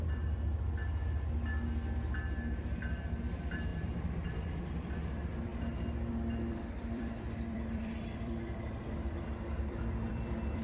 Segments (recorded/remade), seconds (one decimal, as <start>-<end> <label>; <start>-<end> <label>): 0.0-0.5 remade; 0.5-2.8 recorded; 2.8-5.5 remade; 5.5-6.1 recorded; 6.1-10.6 remade